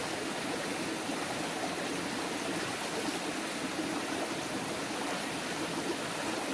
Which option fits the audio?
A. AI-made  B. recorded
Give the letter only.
B